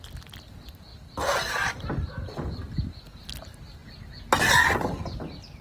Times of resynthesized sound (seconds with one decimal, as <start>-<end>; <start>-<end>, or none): none